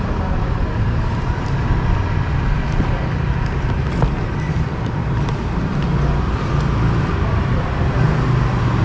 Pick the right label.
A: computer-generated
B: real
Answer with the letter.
B